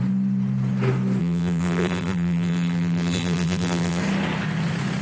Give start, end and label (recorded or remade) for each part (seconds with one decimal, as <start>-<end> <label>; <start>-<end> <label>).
0.0-1.2 recorded; 1.2-4.0 remade; 4.0-5.0 recorded